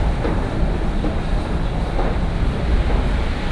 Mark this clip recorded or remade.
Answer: recorded